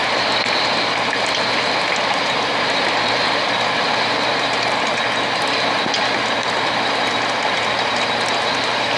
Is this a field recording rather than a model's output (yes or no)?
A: yes